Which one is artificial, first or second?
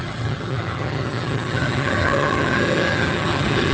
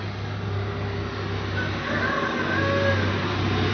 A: first